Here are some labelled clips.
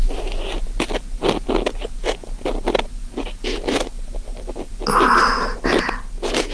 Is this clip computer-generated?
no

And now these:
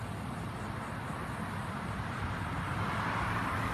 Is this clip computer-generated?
no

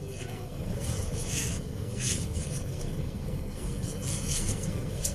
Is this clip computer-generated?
yes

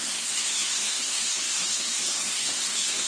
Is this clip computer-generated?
yes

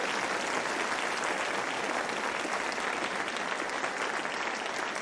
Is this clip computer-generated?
no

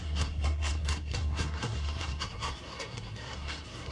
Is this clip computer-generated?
yes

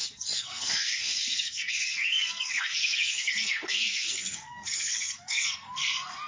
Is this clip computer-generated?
yes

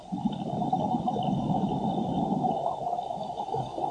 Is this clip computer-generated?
no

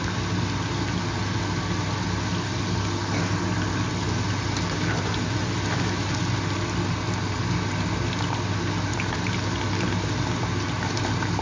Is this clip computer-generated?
no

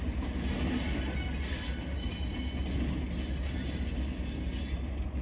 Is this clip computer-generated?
no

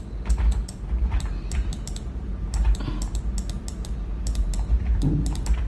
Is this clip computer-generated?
no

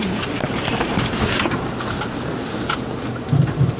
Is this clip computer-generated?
no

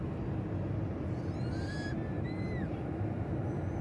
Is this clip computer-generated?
no